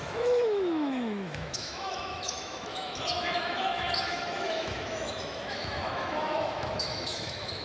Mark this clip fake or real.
fake